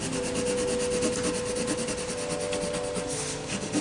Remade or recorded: recorded